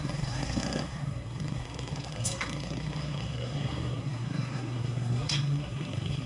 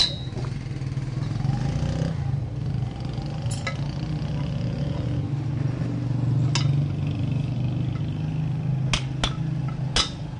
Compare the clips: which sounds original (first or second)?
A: second